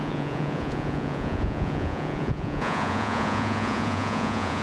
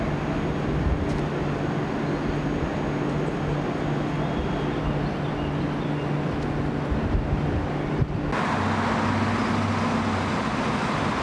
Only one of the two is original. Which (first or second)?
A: second